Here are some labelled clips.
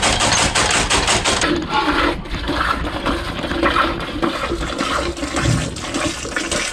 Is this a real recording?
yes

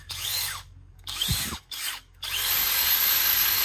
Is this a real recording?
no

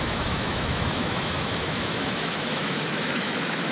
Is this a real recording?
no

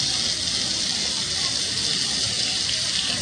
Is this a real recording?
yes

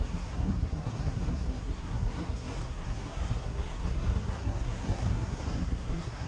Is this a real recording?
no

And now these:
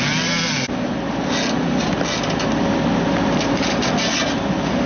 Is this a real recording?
yes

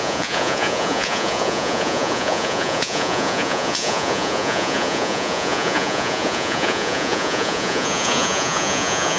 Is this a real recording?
no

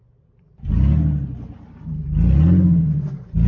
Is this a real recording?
yes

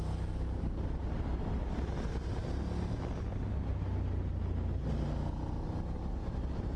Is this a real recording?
yes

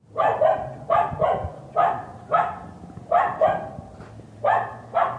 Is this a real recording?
yes